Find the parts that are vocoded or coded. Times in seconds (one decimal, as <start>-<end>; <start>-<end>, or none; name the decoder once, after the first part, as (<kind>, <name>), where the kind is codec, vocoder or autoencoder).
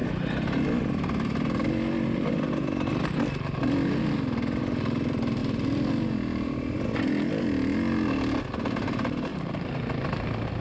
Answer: none